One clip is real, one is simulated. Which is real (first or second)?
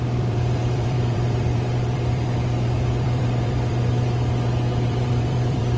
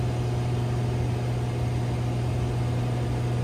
second